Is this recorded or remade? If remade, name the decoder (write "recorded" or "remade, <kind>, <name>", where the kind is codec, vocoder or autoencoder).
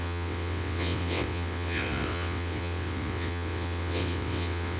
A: remade, vocoder, WaveNeXt